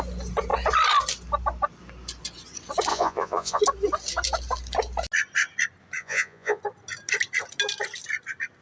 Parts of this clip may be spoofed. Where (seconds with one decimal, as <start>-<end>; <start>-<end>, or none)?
2.9-3.6; 6.0-6.6